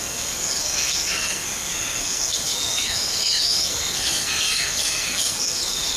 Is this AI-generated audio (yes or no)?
yes